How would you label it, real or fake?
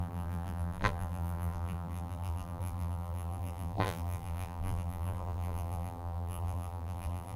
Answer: fake